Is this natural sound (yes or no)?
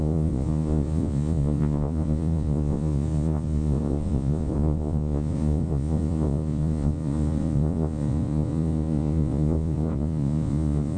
no